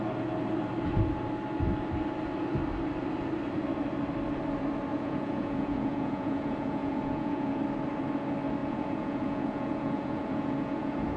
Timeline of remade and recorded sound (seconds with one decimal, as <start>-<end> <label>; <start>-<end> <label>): 0.0-4.9 recorded; 4.9-7.6 remade; 7.6-8.6 recorded; 8.6-11.2 remade